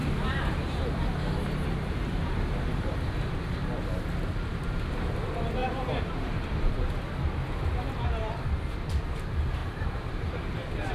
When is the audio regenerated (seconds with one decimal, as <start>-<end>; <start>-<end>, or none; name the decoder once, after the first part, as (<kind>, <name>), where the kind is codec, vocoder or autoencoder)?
0.0-2.6 (vocoder, BigVGAN v2); 5.6-7.8; 9.6-10.9